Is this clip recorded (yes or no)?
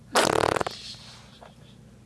yes